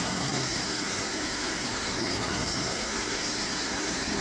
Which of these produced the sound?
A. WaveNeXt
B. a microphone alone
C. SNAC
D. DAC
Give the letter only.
C